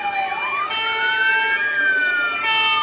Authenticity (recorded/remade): recorded